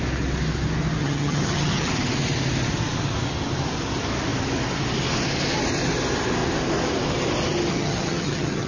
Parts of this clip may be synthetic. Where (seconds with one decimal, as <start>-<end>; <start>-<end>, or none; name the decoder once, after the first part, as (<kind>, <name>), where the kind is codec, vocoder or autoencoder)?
1.0-1.9 (vocoder, HiFi-GAN); 7.7-8.7